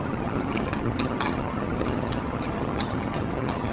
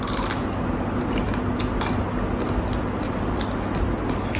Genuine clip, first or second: second